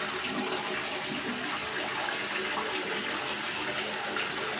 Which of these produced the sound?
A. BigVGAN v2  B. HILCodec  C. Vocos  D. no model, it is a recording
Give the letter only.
D